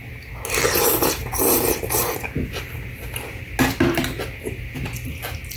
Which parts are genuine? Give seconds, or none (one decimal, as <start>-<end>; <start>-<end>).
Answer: 0.0-5.6